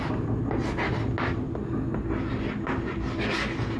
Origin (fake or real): real